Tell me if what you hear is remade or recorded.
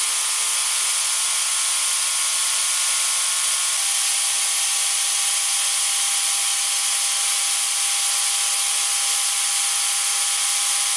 recorded